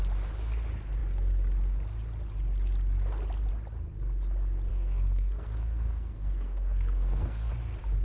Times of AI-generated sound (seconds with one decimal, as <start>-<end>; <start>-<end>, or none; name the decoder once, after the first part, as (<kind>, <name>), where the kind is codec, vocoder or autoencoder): 4.7-7.5 (codec, SNAC)